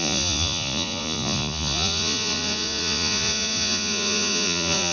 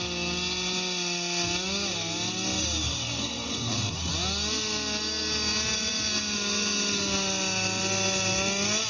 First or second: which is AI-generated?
first